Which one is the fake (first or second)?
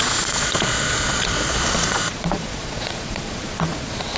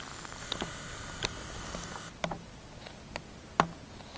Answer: first